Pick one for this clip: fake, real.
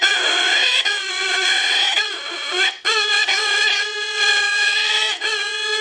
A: fake